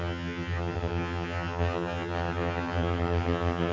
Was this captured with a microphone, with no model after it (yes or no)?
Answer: no